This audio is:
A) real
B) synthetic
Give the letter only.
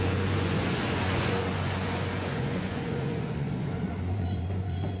B